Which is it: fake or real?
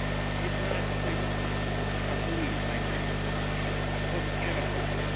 real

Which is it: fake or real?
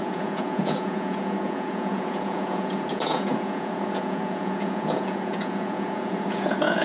fake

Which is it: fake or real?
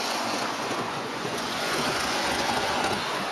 fake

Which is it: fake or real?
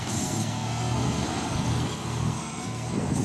fake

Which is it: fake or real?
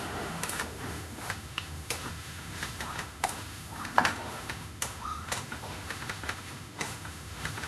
fake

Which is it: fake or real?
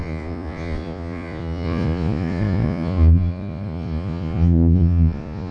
fake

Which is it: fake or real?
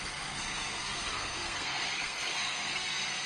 fake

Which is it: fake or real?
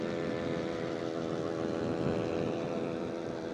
real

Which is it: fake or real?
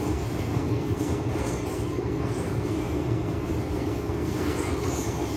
fake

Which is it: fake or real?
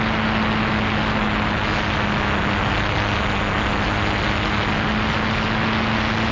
real